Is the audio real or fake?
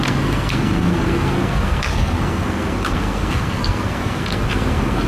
fake